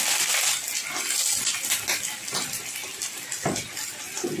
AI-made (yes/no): no